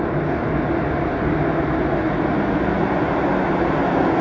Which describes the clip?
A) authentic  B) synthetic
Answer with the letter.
A